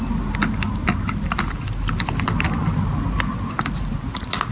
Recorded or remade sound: recorded